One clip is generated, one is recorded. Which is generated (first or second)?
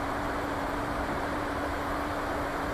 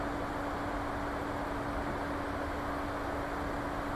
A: first